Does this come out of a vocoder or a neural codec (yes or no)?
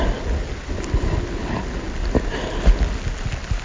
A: no